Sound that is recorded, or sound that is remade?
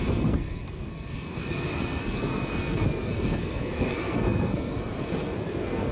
remade